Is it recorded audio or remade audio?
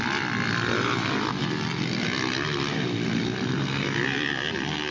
recorded